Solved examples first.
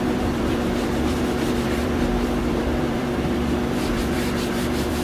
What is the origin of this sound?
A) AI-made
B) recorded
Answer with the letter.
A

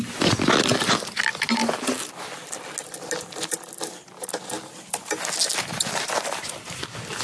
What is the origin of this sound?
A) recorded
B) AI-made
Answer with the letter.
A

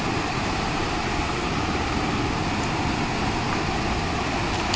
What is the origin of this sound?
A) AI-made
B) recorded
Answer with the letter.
B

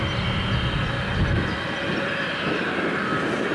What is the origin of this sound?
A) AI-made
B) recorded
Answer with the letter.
B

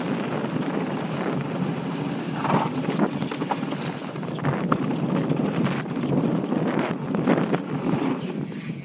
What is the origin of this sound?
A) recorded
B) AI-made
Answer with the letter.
A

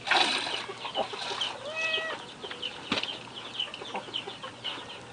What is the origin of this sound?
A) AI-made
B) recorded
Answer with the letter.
B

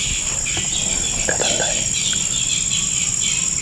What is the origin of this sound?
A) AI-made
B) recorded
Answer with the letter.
B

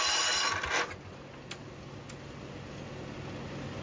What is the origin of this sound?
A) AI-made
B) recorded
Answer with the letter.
B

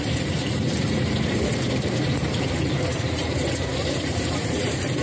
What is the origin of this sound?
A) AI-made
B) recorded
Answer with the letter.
A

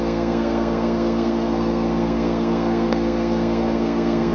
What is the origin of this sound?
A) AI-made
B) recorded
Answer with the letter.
A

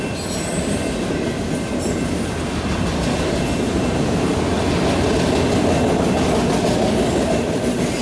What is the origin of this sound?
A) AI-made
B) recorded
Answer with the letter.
B